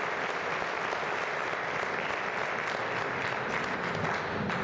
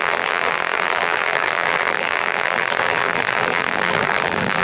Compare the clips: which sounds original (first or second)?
first